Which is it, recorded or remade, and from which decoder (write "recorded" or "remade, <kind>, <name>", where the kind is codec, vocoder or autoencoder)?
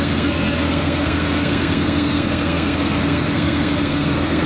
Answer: remade, codec, SNAC